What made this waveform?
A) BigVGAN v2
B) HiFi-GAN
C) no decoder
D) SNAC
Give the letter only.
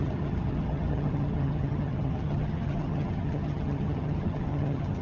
B